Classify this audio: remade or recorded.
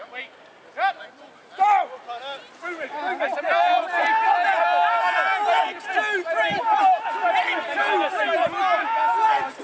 recorded